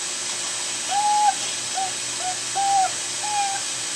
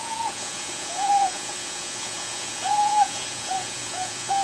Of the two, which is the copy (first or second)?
second